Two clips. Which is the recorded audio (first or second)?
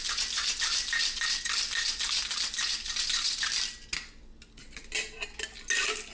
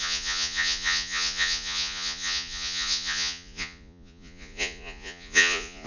first